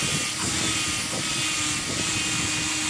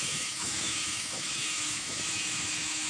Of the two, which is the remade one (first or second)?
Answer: second